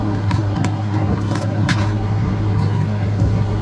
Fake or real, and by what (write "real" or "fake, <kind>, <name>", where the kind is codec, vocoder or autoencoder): fake, codec, SNAC